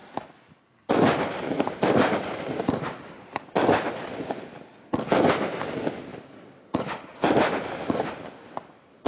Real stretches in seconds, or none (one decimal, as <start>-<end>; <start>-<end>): 0.0-9.1